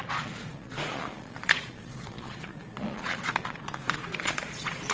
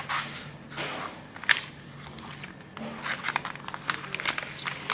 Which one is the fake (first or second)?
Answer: first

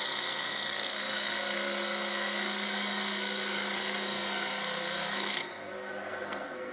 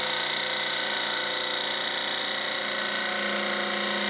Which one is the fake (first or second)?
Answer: first